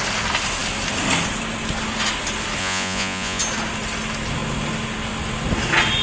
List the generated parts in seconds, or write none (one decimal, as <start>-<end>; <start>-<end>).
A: 2.6-3.4